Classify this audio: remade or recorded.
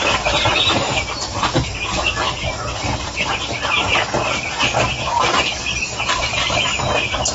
recorded